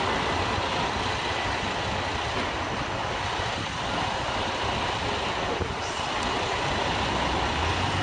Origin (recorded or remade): recorded